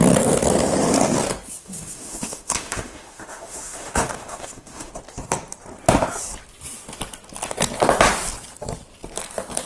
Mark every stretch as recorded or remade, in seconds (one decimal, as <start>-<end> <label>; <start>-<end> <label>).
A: 0.0-1.6 recorded; 1.6-4.9 remade; 4.9-9.7 recorded